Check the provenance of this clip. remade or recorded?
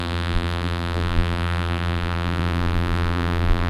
remade